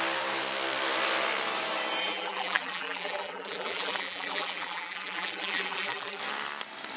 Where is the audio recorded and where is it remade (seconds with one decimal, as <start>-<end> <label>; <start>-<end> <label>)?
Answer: 0.0-2.0 recorded; 2.0-6.2 remade; 6.2-7.0 recorded